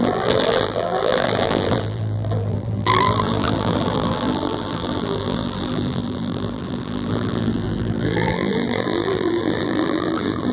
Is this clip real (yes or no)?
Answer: no